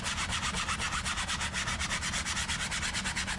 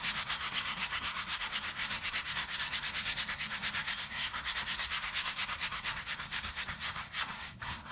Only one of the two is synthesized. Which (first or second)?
second